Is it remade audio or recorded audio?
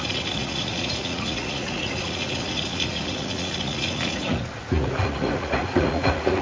remade